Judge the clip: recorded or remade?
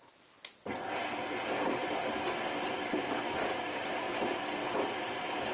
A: recorded